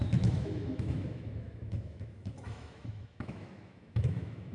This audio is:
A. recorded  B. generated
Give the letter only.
B